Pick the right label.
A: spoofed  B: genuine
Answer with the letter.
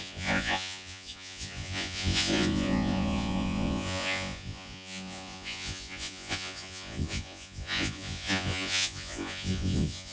A